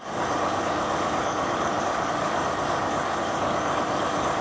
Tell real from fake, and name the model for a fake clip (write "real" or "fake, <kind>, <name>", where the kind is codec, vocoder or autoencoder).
fake, codec, DAC